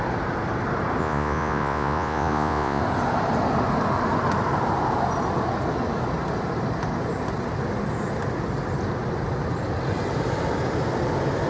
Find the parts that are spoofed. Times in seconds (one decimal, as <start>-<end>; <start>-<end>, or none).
1.0-2.8